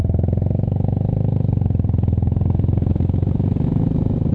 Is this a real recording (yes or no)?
yes